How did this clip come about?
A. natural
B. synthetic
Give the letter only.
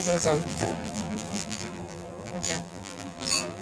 B